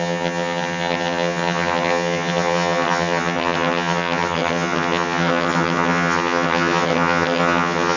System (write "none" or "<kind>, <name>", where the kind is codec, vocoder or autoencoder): vocoder, HiFi-GAN